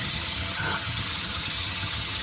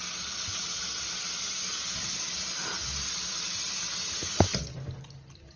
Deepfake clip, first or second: first